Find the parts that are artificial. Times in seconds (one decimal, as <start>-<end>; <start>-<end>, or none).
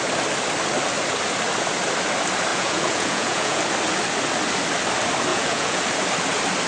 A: 2.5-3.6; 5.3-5.8